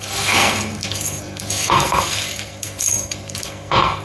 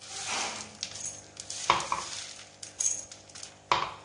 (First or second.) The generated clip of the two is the first